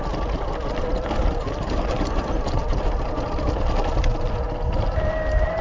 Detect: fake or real real